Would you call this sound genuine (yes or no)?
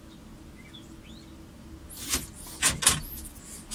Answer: yes